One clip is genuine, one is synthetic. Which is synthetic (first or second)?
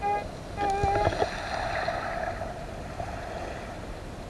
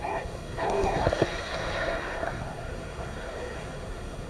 second